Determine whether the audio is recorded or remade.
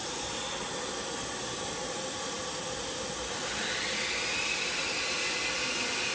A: recorded